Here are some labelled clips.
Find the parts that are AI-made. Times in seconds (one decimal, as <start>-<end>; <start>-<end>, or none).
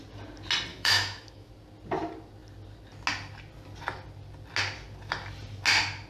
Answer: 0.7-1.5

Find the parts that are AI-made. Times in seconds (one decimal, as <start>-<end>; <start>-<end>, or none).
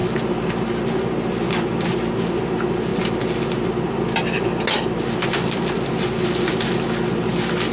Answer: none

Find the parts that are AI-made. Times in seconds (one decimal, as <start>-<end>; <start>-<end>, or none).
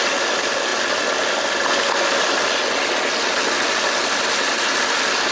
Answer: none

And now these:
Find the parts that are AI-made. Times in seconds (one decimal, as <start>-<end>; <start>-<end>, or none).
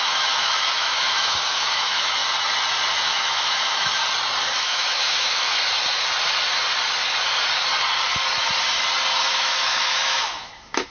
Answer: 0.0-2.2; 2.9-4.0; 4.6-5.5; 9.3-10.9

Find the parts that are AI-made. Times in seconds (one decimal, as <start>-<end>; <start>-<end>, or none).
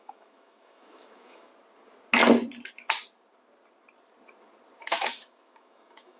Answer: 0.0-1.5; 4.8-6.2